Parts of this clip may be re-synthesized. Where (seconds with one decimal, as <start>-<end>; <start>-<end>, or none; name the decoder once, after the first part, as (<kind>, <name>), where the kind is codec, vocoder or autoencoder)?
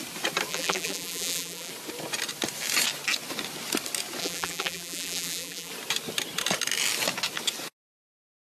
0.5-1.7 (vocoder, BigVGAN v2); 4.2-5.7